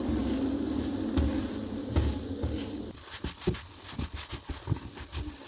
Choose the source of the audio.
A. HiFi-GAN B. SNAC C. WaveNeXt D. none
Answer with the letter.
D